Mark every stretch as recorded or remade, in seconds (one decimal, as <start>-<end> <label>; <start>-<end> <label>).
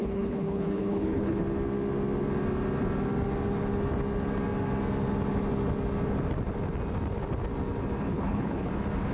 0.0-1.4 remade; 1.4-8.1 recorded; 8.1-8.7 remade; 8.7-9.1 recorded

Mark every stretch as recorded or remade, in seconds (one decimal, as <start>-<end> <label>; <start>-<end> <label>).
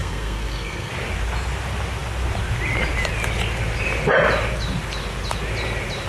0.0-0.9 remade; 0.9-6.1 recorded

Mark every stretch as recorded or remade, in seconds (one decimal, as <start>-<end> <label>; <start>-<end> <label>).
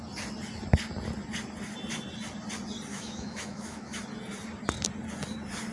0.0-2.9 recorded; 2.9-4.0 remade; 4.0-5.7 recorded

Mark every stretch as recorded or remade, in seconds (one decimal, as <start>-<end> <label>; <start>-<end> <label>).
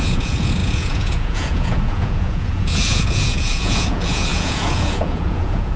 0.0-5.8 remade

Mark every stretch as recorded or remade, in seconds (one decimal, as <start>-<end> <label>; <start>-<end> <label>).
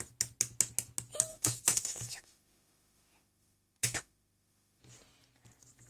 0.0-1.3 recorded; 1.3-4.8 remade; 4.8-5.9 recorded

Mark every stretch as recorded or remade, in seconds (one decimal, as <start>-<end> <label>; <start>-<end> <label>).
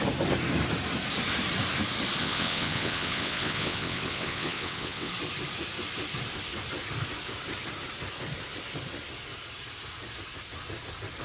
0.0-2.2 recorded; 2.2-5.1 remade; 5.1-11.2 recorded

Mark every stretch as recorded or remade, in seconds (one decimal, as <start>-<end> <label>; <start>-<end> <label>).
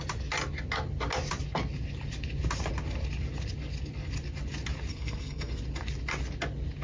0.0-4.9 recorded; 4.9-5.6 remade; 5.6-6.8 recorded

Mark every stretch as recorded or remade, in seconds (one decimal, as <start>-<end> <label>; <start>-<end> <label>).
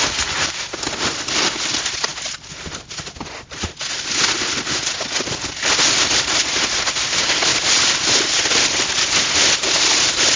0.0-10.4 recorded